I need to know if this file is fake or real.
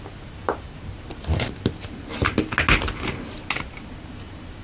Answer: real